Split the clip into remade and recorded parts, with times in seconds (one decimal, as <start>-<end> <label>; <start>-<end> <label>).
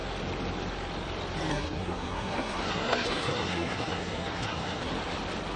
0.0-1.5 recorded; 1.5-4.9 remade; 4.9-5.6 recorded